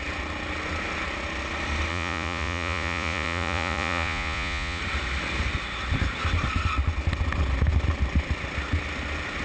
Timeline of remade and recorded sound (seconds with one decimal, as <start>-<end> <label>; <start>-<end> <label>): 0.0-1.9 recorded; 1.9-4.8 remade; 4.8-9.4 recorded